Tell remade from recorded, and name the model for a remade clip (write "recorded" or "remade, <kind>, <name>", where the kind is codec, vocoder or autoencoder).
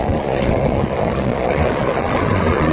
remade, vocoder, Vocos